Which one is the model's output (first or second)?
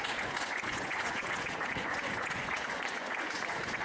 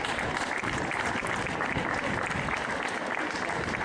first